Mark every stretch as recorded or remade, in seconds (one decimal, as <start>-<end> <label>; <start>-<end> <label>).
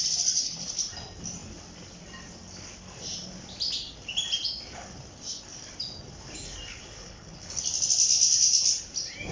0.0-6.7 recorded; 6.7-7.6 remade; 7.6-9.3 recorded